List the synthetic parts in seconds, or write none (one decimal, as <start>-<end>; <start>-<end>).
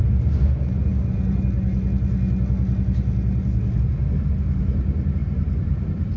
5.2-6.2